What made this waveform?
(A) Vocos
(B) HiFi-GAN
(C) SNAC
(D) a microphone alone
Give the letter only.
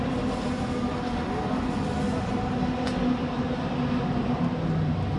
D